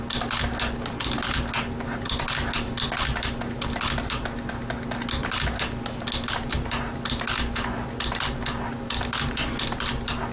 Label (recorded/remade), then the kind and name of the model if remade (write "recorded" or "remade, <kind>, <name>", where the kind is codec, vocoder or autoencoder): recorded